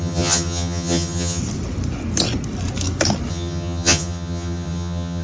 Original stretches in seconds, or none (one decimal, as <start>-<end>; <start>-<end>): 1.4-3.3